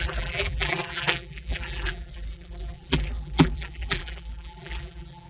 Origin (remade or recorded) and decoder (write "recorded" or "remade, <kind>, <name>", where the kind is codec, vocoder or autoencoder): remade, vocoder, BigVGAN v2